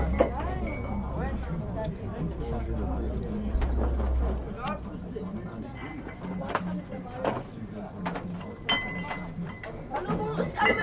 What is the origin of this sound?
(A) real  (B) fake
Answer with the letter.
A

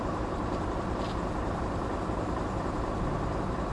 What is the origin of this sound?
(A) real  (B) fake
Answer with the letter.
A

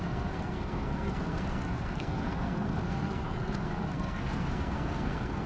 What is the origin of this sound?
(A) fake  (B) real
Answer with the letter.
A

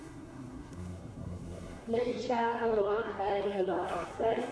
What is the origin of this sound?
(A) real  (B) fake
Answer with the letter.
B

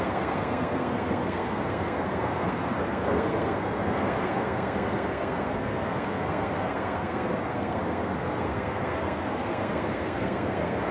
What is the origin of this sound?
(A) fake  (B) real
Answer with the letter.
A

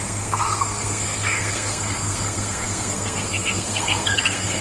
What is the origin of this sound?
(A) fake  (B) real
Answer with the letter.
A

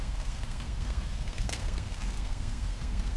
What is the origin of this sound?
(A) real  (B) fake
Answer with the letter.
B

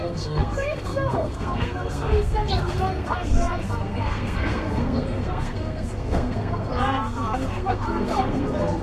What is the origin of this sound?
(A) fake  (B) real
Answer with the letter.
A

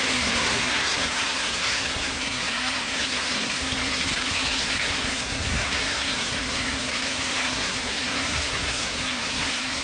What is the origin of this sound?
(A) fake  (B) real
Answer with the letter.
A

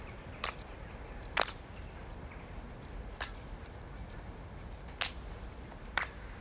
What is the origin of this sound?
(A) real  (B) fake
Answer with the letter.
A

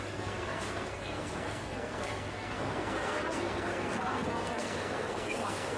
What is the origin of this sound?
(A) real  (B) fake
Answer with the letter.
B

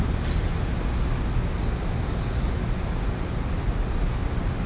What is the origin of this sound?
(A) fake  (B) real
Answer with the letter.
B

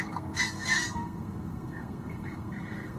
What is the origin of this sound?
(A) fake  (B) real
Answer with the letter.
A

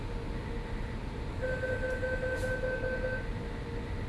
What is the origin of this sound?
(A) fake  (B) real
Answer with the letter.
B